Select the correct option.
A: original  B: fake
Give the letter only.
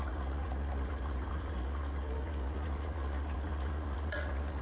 B